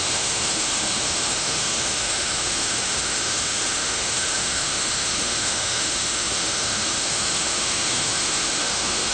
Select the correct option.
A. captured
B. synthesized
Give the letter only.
B